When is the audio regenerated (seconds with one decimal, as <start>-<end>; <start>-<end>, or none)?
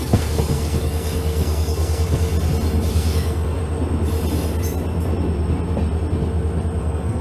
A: 0.0-2.3; 2.9-3.6; 6.8-7.2